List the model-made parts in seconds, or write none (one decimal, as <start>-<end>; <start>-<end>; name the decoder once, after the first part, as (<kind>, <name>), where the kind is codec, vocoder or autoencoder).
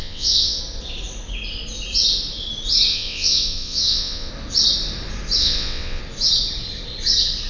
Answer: 0.0-0.6 (vocoder, WaveNeXt); 2.9-4.3; 5.4-6.0